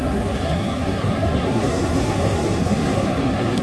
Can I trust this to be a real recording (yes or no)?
no